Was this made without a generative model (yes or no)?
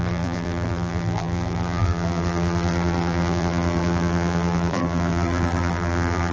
no